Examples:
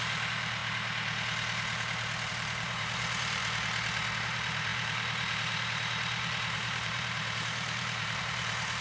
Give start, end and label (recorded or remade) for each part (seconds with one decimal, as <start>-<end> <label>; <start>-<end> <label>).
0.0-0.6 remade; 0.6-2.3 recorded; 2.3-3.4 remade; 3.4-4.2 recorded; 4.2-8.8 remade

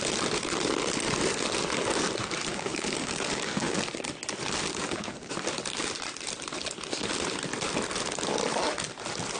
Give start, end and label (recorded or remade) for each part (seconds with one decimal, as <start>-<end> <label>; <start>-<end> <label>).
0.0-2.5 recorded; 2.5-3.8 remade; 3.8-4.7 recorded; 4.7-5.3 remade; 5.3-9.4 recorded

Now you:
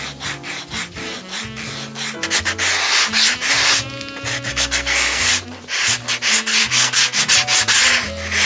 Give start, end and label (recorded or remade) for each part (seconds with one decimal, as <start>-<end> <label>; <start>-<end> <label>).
0.0-4.5 recorded; 4.5-5.3 remade; 5.3-6.6 recorded; 6.6-7.2 remade; 7.2-8.5 recorded

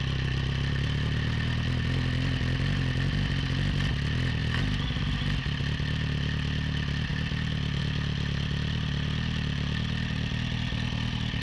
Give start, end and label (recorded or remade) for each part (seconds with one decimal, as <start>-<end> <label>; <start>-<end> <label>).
0.0-11.4 recorded